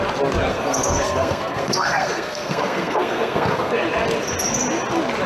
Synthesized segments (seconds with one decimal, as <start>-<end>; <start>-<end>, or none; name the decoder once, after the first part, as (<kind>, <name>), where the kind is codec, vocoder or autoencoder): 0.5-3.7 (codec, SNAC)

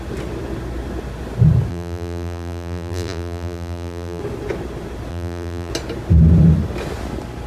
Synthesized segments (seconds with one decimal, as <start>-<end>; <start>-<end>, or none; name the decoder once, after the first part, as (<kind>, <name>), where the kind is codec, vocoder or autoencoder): 1.7-4.2 (vocoder, BigVGAN v2); 5.1-5.7

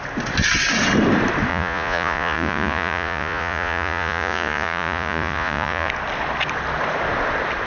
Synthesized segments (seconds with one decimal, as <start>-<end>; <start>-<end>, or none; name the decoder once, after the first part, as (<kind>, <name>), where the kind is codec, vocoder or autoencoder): 1.5-5.9 (vocoder, Vocos)

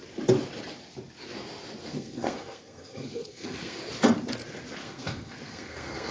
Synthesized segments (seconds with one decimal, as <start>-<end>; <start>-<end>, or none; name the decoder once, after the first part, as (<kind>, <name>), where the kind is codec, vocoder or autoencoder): 1.8-3.8 (codec, SNAC); 4.8-6.1

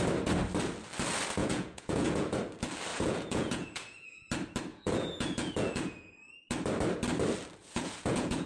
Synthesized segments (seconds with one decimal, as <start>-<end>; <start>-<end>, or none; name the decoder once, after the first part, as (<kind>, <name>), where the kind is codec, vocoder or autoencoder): 1.4-2.4 (vocoder, Vocos); 2.9-4.3; 4.7-6.1; 7.6-8.5